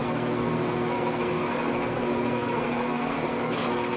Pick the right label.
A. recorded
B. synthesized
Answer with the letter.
B